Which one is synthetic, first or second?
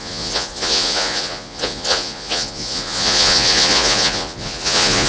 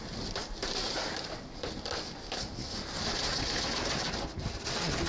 first